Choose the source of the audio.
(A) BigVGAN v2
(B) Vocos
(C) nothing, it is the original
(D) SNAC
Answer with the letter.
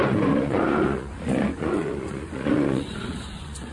B